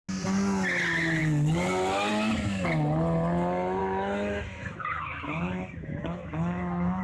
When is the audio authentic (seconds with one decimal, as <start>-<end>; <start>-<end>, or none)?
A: 0.0-3.8

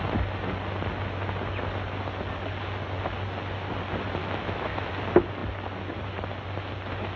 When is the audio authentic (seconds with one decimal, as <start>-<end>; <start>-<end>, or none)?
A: 0.0-4.2; 4.9-7.2